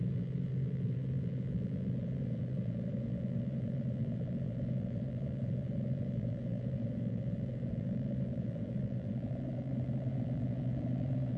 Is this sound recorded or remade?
remade